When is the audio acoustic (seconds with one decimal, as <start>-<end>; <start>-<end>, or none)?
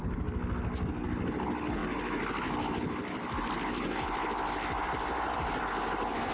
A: 0.0-6.3